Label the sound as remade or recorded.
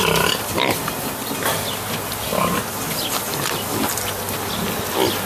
recorded